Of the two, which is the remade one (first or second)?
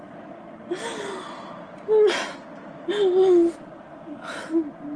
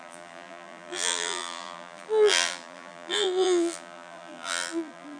second